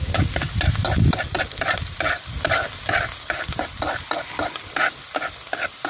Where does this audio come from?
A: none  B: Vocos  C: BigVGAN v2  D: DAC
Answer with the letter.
A